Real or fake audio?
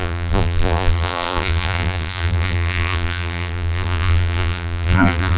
fake